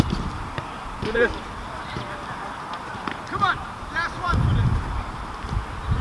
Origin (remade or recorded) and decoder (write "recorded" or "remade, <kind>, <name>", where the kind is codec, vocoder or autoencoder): remade, vocoder, BigVGAN v2